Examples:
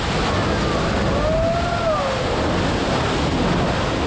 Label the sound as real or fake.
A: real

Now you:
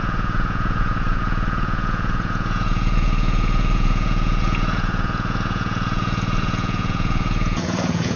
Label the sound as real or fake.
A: fake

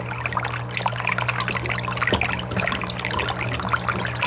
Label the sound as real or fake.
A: real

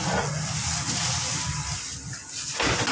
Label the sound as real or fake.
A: real